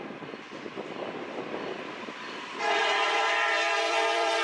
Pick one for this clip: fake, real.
fake